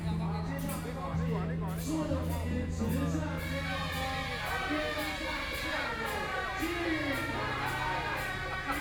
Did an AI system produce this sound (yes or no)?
no